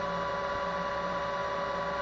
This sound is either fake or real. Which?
real